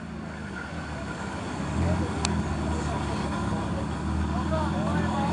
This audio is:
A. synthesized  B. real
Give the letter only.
A